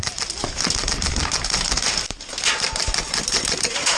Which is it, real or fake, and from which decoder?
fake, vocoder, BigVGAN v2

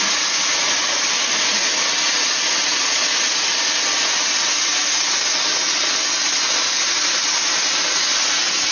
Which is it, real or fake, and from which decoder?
real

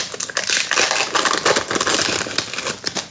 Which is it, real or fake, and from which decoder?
real